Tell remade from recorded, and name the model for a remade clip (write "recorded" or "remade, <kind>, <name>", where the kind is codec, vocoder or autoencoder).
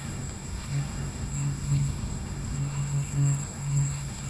remade, codec, SNAC